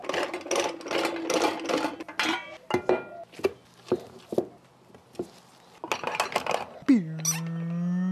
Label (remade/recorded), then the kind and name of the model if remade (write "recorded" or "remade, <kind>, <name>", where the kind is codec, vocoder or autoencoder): recorded